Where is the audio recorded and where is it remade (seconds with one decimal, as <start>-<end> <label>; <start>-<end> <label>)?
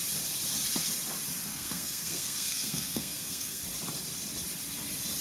0.0-1.5 recorded; 1.5-3.6 remade; 3.6-5.2 recorded